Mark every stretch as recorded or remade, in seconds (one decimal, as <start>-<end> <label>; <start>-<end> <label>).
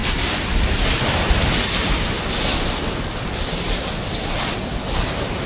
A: 0.0-5.5 recorded